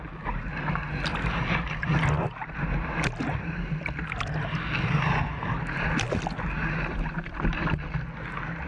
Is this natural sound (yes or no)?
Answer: yes